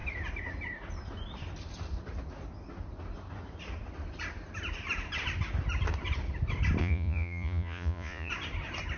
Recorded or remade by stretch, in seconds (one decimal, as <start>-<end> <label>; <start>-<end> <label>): 0.0-6.8 recorded; 6.8-8.3 remade; 8.3-9.0 recorded